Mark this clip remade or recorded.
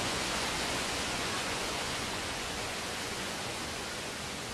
remade